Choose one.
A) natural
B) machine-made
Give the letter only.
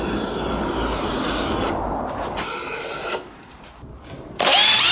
A